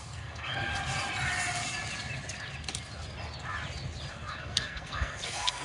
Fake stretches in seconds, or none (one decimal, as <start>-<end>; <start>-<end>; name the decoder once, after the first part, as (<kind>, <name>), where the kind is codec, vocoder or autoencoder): 0.0-0.7 (codec, SNAC); 4.1-5.6